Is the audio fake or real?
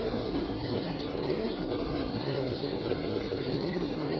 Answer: fake